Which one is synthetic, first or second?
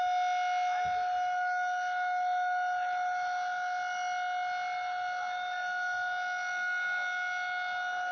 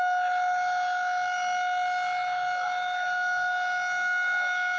second